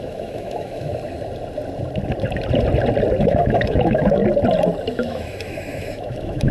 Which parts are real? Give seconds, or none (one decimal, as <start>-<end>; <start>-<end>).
0.9-3.2; 4.2-4.9